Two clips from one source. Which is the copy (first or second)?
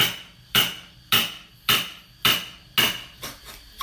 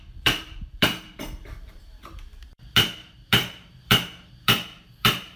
second